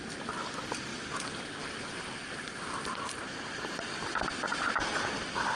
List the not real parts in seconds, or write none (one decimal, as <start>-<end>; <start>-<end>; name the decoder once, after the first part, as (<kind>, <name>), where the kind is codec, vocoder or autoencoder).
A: none